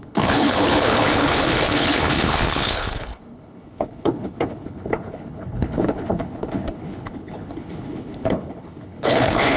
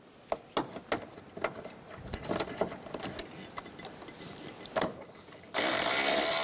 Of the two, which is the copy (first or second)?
first